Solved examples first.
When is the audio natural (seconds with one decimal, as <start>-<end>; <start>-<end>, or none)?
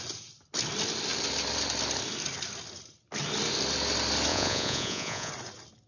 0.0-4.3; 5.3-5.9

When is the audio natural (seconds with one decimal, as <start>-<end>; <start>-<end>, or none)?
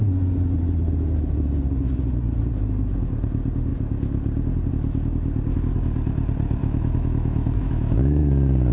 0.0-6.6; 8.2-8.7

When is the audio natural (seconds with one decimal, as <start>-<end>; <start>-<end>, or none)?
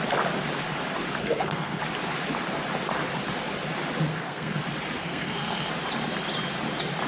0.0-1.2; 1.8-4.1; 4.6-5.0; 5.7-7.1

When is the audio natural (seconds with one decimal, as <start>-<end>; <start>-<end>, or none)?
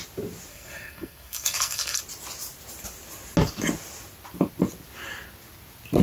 0.0-0.5; 2.0-6.0